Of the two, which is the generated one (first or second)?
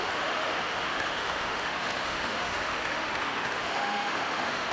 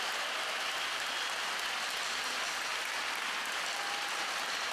first